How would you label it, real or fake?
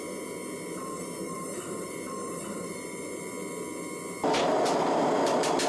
fake